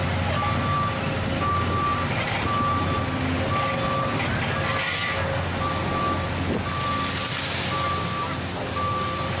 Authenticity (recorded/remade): recorded